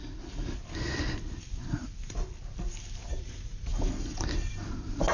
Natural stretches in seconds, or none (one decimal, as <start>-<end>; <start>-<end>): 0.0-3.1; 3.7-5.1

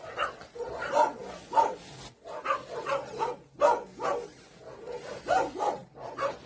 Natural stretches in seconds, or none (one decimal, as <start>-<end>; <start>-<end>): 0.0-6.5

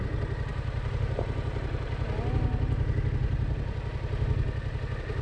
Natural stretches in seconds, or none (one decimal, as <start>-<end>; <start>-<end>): 0.0-5.2

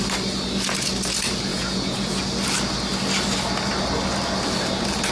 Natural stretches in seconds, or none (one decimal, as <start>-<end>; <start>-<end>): 0.0-1.5; 2.2-5.1

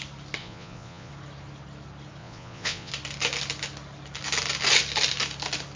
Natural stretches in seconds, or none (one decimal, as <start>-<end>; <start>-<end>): 0.0-0.4; 1.1-2.2; 2.9-5.8

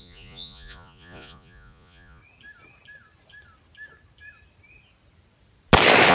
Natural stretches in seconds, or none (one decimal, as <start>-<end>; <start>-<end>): 2.2-6.1

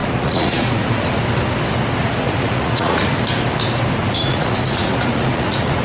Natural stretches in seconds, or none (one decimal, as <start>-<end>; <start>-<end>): 1.2-2.0; 3.2-4.0

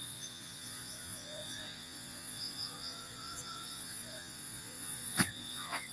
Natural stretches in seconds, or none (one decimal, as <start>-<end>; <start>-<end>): none